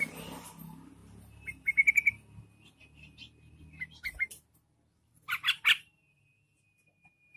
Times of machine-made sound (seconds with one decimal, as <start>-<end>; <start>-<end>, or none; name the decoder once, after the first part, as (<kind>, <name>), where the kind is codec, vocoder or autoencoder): none